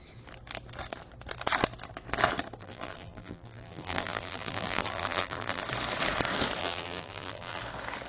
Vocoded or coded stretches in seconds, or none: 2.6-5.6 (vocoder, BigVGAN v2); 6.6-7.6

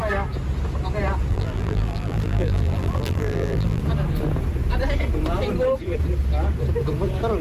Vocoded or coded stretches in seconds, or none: 1.3-3.8 (vocoder, BigVGAN v2)

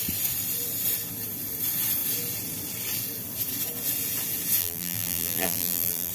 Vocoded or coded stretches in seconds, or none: 4.6-6.1 (vocoder, BigVGAN v2)

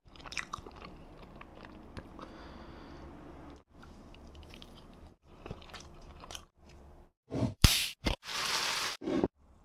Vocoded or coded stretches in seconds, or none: 0.0-1.5 (vocoder, BigVGAN v2); 3.8-9.6

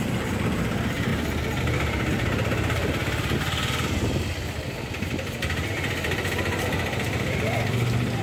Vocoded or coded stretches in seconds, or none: 0.0-1.1 (vocoder, BigVGAN v2); 1.6-8.2

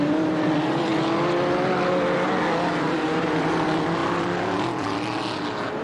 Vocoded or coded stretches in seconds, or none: 0.0-0.9 (vocoder, BigVGAN v2); 3.2-5.8